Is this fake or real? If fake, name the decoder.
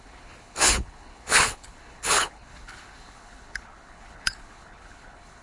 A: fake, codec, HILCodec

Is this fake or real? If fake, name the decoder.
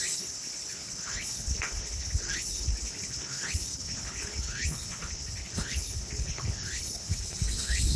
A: fake, codec, HILCodec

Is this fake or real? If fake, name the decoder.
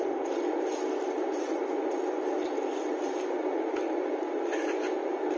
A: real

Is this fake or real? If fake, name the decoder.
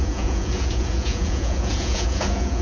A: fake, vocoder, Vocos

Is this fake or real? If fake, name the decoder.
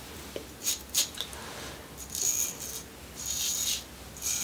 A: real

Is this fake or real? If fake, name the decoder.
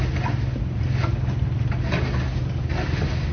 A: real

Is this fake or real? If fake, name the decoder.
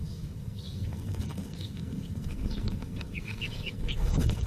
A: fake, codec, SNAC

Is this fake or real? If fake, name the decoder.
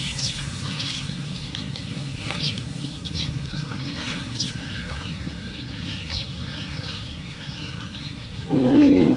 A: fake, codec, SNAC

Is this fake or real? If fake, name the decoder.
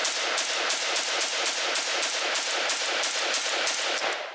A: real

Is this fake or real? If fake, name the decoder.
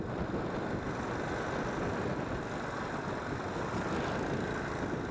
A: real